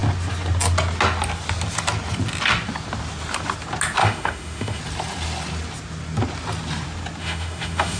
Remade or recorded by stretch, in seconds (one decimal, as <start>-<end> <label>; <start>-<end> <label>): 0.0-4.0 recorded; 4.0-4.8 remade; 4.8-7.2 recorded; 7.2-8.0 remade